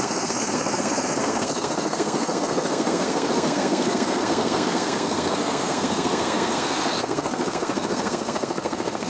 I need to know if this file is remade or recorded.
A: remade